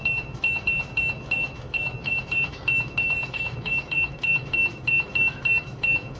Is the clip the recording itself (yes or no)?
no